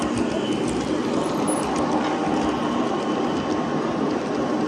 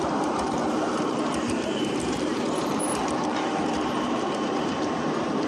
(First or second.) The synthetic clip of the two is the second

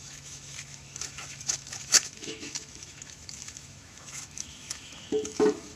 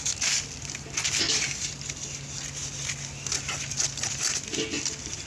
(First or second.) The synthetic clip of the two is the first